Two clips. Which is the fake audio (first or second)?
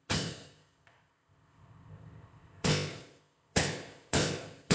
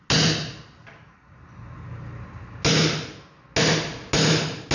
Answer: first